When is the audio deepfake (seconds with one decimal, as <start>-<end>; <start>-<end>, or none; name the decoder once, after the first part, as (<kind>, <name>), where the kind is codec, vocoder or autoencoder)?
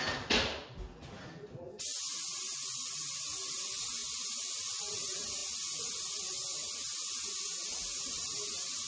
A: none